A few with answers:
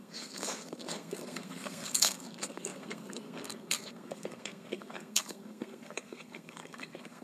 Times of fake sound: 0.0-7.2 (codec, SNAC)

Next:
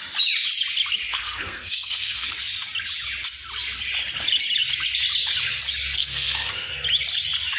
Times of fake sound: 1.1-2.3 (codec, SNAC); 6.0-6.7

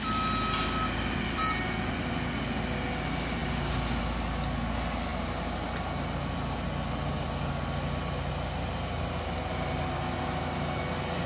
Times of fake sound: none

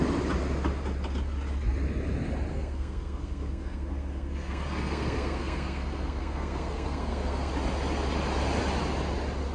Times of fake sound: 2.5-7.5 (codec, SNAC)